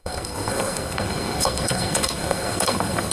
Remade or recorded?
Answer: remade